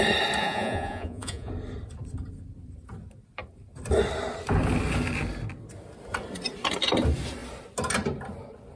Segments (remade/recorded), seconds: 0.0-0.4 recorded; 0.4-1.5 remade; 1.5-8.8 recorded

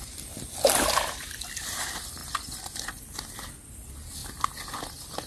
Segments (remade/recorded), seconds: 0.0-5.3 recorded

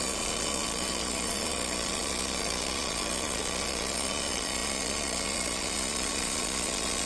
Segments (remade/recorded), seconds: 0.0-7.1 remade

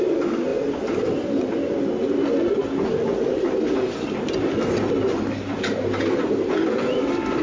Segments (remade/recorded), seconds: 0.0-7.4 recorded

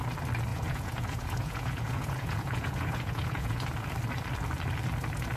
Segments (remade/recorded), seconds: 0.0-0.5 recorded; 0.5-3.7 remade; 3.7-5.4 recorded

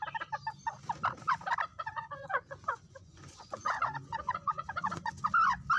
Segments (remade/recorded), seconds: 0.0-1.7 recorded; 1.7-5.1 remade; 5.1-5.8 recorded

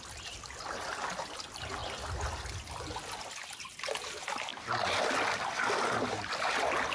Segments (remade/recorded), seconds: 0.0-6.9 recorded

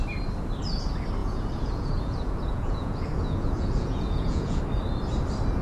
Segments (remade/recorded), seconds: 0.0-1.2 recorded; 1.2-4.6 remade; 4.6-5.6 recorded